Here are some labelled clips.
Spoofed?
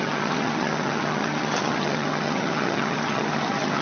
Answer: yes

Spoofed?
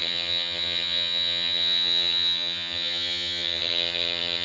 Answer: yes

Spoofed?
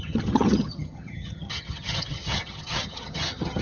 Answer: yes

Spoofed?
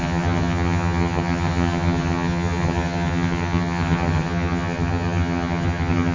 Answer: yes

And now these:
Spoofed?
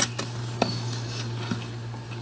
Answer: no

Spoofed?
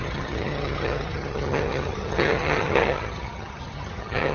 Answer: yes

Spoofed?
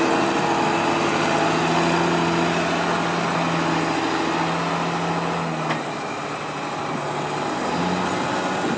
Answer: no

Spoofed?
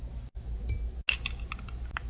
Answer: no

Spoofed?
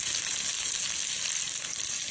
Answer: no